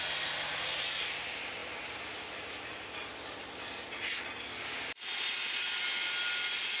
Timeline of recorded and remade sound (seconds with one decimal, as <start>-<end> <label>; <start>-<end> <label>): 0.0-6.8 recorded